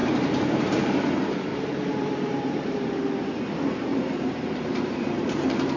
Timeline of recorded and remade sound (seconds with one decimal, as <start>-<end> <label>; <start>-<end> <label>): 0.0-1.1 remade; 1.1-1.5 recorded; 1.5-2.9 remade; 2.9-3.9 recorded; 3.9-5.8 remade